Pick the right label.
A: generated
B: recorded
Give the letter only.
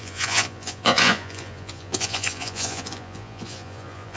A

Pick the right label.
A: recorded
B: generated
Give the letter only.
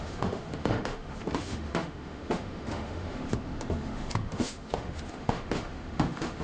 B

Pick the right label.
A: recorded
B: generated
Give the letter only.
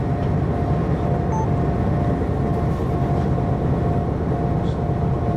A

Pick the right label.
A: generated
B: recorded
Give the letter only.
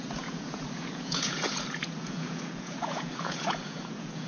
A